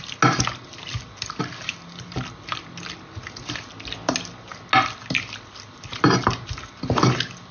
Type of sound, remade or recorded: recorded